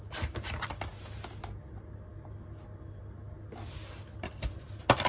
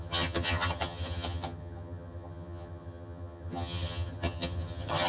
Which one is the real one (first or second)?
first